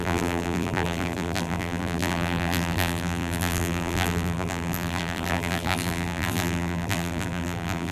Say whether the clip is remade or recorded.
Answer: remade